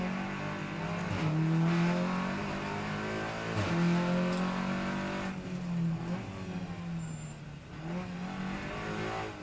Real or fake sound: real